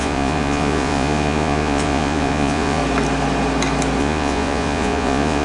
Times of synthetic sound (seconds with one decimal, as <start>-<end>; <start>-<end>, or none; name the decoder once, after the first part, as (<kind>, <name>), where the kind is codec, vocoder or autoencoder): 0.0-2.8 (vocoder, Vocos); 4.0-5.4